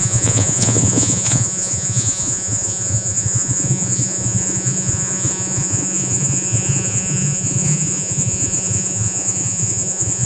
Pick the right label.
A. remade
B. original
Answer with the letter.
A